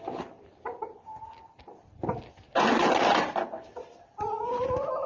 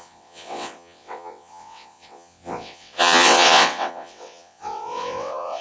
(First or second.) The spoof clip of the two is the second